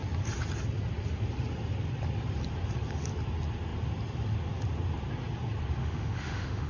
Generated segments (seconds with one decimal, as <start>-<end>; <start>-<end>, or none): 5.8-6.7